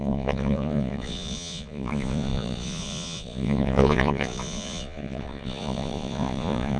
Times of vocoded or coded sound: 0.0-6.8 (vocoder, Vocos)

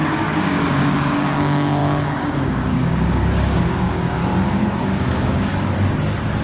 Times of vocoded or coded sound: 0.0-4.2 (codec, DAC); 4.8-5.5

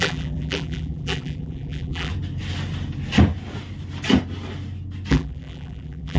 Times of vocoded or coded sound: 0.0-2.1 (vocoder, BigVGAN v2); 5.1-6.2

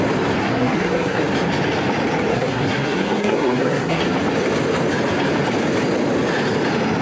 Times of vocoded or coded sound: 0.4-1.2 (codec, SNAC); 2.3-4.0

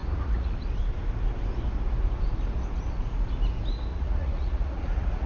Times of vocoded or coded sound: 0.0-0.5 (vocoder, Vocos); 3.9-5.3

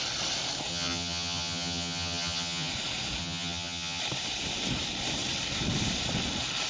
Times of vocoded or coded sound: 0.7-2.7 (vocoder, HiFi-GAN); 3.2-4.0

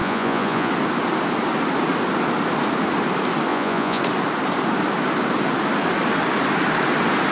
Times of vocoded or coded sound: 0.0-0.7 (vocoder, Vocos); 3.5-4.0